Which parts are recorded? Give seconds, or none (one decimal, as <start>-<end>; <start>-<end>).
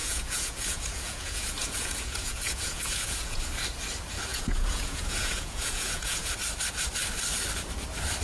3.4-4.3; 6.3-8.2